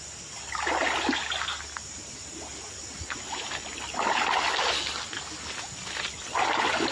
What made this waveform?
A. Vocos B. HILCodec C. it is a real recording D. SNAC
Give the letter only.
C